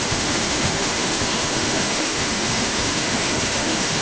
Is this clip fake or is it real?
fake